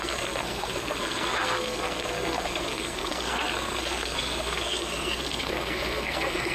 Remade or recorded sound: remade